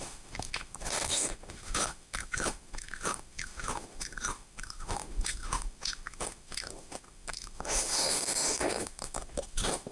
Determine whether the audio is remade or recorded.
remade